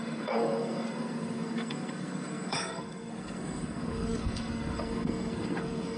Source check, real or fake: fake